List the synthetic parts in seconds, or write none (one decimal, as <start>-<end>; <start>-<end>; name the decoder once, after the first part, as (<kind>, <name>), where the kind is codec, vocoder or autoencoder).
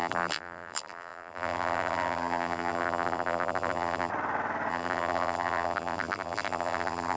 0.0-4.1 (vocoder, BigVGAN v2); 4.7-7.2